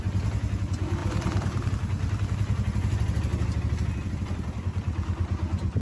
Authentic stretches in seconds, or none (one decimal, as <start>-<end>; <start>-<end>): 0.0-1.0; 1.7-5.8